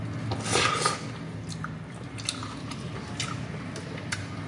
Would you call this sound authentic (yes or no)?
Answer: yes